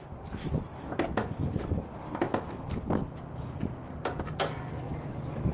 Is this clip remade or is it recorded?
recorded